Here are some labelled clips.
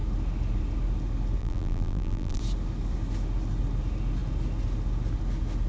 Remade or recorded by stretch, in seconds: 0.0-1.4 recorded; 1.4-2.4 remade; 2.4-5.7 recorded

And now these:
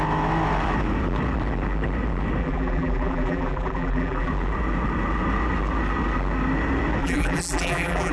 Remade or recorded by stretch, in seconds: 0.0-2.4 recorded; 2.4-4.3 remade; 4.3-7.0 recorded; 7.0-8.1 remade